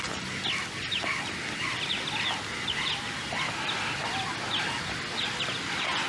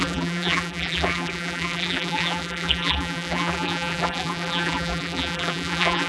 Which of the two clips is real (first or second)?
first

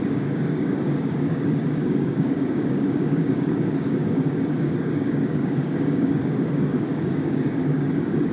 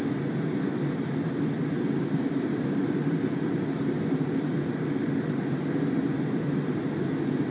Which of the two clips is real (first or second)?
second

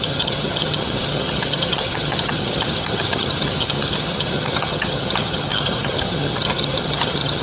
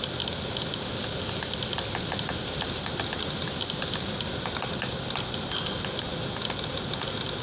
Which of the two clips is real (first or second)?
second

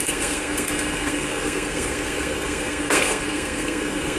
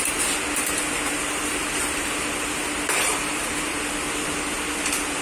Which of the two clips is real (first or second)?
second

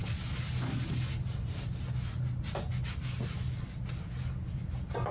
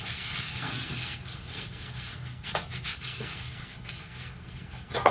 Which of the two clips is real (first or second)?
first